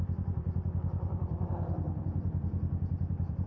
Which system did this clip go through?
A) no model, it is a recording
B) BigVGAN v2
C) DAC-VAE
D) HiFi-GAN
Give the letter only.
B